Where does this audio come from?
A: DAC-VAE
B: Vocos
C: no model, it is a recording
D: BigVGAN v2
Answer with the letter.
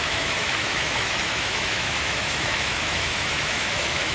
A